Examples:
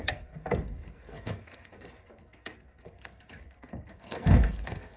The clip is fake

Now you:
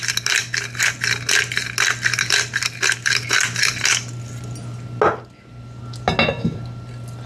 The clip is real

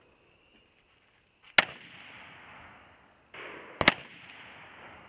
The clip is real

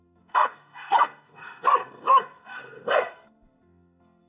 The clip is fake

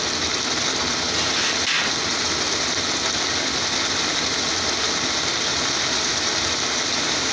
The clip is real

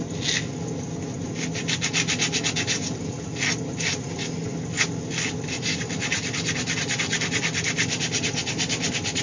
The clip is real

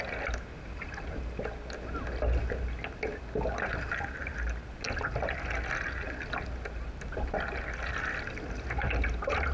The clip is real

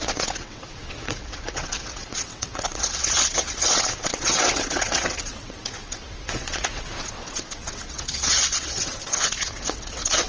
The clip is fake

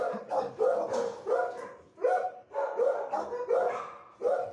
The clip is real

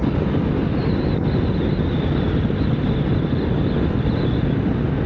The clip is real